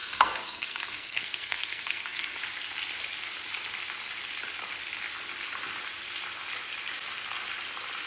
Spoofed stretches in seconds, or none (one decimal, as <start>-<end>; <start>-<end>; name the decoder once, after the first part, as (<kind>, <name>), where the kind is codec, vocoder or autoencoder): 0.0-2.4 (codec, SNAC)

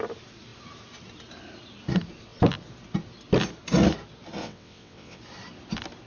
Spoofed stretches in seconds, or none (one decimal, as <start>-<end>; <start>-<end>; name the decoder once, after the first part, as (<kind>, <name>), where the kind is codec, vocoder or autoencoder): 4.4-5.2 (vocoder, WaveNeXt)